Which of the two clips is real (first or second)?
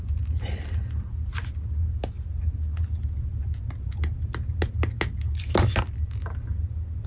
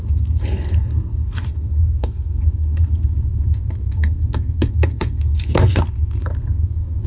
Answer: first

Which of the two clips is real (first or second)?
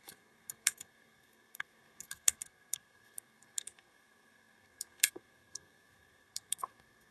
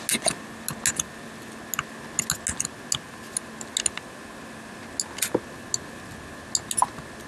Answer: second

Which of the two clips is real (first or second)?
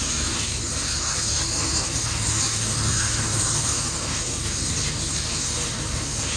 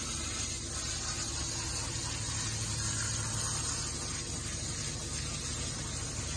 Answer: second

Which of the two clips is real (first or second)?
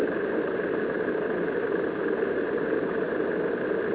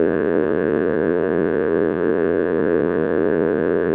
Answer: first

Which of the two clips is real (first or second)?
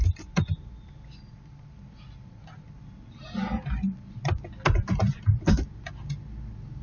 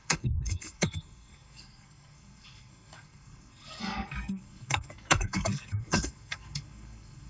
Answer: first